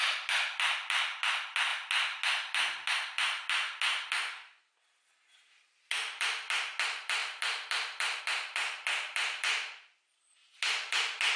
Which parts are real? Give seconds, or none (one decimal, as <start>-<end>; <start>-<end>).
0.0-11.4